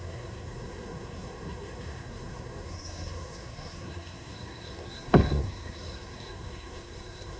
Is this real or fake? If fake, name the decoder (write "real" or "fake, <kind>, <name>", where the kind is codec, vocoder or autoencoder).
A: fake, codec, SNAC